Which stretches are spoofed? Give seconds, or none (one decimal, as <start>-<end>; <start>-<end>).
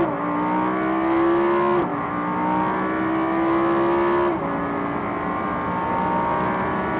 none